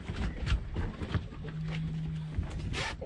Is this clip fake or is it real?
real